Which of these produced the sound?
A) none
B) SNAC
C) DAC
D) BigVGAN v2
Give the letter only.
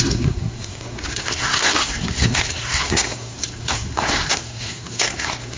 B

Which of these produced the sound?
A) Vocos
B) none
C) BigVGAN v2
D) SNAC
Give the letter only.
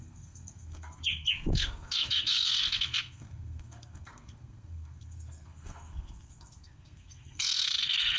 D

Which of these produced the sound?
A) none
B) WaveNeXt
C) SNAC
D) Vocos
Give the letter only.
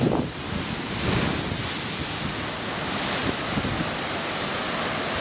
A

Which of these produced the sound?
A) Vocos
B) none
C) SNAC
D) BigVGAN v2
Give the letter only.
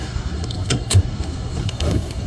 C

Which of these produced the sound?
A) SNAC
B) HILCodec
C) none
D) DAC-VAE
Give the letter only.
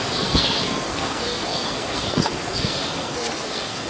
A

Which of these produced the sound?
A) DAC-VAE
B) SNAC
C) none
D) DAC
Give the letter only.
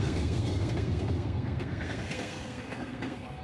B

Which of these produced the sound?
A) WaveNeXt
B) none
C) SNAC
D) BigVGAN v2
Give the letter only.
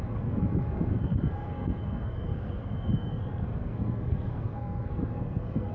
C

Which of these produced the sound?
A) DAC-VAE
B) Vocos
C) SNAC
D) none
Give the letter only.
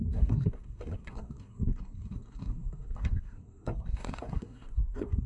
C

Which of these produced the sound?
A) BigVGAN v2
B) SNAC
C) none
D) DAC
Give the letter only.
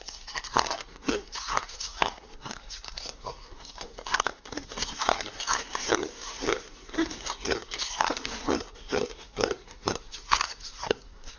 B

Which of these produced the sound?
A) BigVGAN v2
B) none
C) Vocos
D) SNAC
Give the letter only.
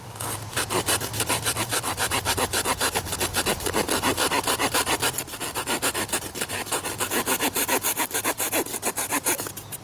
B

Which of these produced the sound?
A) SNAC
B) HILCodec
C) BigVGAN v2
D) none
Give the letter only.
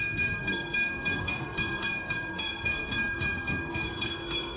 A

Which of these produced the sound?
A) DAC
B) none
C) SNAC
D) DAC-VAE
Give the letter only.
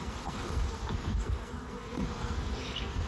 C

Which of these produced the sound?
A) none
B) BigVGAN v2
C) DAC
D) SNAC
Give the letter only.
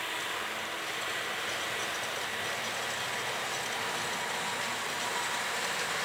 A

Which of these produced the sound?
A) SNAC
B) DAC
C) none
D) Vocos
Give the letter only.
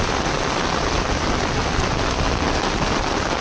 C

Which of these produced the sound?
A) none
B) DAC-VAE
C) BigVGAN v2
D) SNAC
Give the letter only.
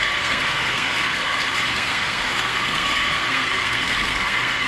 D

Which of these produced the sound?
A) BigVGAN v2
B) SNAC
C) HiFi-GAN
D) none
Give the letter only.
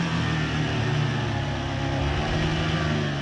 D